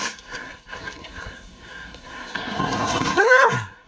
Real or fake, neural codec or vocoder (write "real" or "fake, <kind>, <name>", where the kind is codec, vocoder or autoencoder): fake, codec, SNAC